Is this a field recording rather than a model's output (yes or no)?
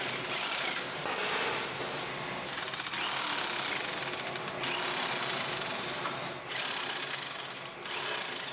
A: yes